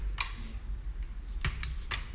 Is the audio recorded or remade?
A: recorded